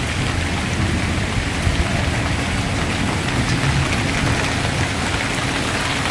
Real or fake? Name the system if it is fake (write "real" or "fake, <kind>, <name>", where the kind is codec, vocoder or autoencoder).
real